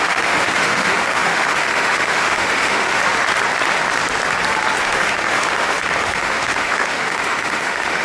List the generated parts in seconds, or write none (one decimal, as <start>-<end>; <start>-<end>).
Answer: 0.0-3.0; 4.8-8.0